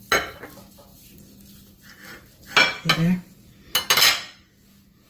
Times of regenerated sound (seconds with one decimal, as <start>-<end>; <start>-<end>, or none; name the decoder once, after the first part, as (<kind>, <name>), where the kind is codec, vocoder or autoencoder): none